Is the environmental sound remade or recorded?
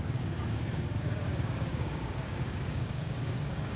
remade